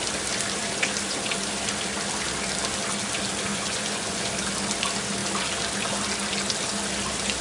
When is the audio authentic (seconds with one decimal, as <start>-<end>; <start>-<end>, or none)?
0.0-3.5; 4.3-7.4